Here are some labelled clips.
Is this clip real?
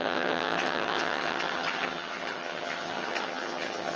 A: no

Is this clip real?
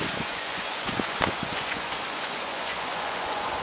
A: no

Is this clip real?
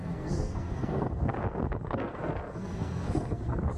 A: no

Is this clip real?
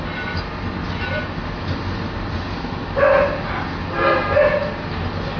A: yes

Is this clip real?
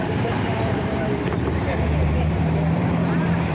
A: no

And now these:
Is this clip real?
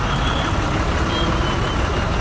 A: yes